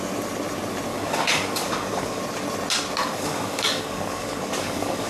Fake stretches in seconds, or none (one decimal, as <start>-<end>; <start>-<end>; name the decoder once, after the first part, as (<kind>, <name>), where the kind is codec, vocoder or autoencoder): 0.9-2.2 (codec, DAC); 3.0-5.1